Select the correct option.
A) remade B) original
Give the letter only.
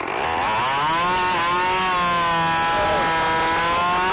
B